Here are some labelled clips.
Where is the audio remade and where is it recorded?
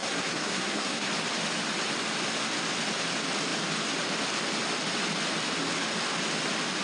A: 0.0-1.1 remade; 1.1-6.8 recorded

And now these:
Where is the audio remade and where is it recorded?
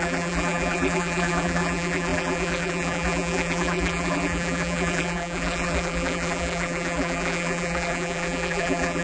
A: 0.0-9.0 remade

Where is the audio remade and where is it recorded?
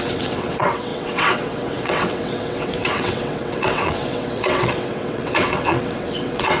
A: 0.0-6.6 remade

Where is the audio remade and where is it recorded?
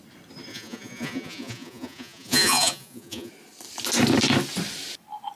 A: 0.0-0.5 recorded; 0.5-3.3 remade; 3.3-5.4 recorded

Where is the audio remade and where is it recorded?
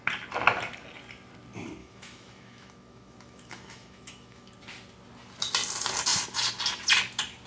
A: 0.0-1.8 recorded; 1.8-4.5 remade; 4.5-7.5 recorded